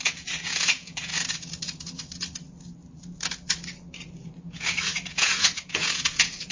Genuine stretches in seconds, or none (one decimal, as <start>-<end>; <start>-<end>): 1.1-4.4